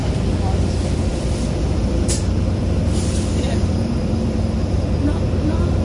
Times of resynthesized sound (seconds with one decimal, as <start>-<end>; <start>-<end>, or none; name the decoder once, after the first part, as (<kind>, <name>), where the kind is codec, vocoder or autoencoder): 0.0-5.8 (vocoder, BigVGAN v2)